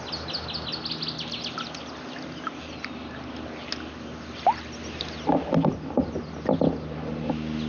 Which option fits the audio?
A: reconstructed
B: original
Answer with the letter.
B